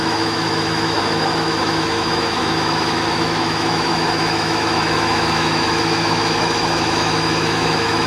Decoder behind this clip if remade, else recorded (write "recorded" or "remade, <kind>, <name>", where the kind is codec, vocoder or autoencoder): remade, autoencoder, DAC-VAE